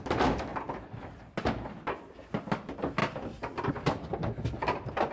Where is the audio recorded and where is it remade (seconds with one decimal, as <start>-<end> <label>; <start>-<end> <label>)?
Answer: 0.0-5.1 recorded